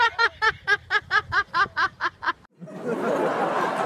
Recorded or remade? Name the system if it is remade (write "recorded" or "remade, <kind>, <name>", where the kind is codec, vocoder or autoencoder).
recorded